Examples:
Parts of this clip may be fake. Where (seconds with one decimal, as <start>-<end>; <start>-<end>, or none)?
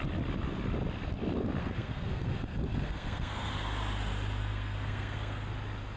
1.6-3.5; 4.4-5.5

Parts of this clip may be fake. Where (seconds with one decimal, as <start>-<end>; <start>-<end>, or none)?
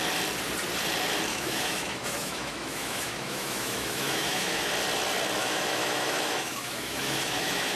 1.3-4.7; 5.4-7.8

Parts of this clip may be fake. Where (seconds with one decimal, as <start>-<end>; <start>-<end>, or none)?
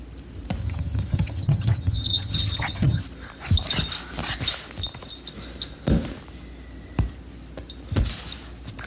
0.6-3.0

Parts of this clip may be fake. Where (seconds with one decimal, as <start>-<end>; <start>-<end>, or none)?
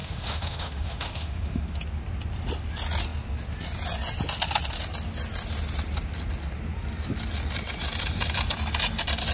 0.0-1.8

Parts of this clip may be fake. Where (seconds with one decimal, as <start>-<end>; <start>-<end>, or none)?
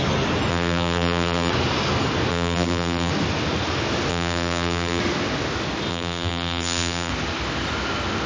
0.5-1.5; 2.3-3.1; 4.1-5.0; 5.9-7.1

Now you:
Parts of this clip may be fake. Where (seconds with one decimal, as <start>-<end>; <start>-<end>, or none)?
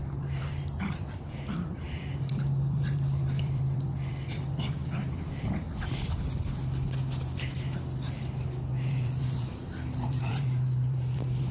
0.0-4.8; 8.9-11.5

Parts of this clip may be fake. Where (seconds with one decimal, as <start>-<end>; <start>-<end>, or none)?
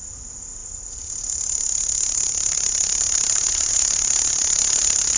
0.0-5.2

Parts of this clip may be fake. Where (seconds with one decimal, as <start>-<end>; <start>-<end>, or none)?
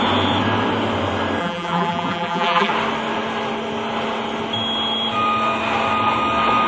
1.4-2.7